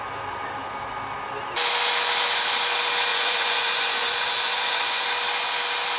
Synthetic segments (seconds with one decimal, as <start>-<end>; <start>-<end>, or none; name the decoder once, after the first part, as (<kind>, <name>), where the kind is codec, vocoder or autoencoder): 3.1-5.0 (vocoder, Vocos)